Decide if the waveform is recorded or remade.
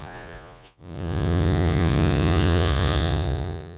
remade